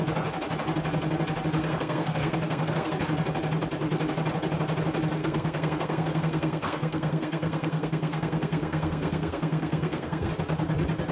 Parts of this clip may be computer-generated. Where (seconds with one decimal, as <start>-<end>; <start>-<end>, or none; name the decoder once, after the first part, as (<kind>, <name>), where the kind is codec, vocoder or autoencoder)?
1.6-2.9 (codec, SNAC); 5.2-10.3